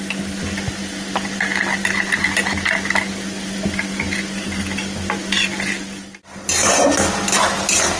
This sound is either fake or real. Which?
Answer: real